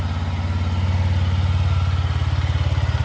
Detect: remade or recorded recorded